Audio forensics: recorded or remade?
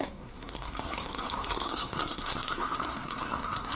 remade